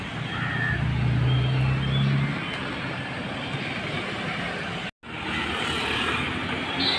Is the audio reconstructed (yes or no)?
no